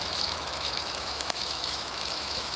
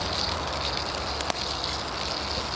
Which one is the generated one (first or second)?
first